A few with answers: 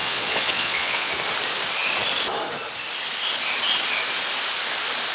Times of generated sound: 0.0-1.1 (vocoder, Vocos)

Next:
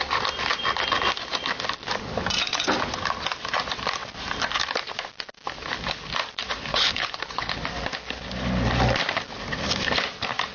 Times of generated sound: 6.7-7.5 (codec, HILCodec)

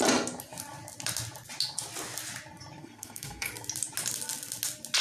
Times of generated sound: 2.8-3.5 (codec, SNAC)